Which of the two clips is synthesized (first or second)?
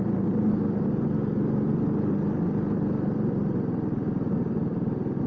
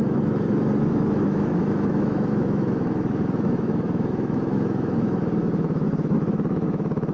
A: second